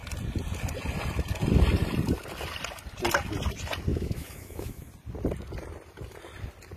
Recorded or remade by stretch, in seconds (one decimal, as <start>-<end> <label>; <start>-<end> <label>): 0.0-3.9 recorded; 3.9-4.9 remade; 4.9-6.8 recorded